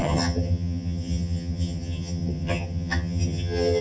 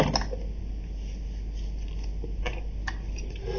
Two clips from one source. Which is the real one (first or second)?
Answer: second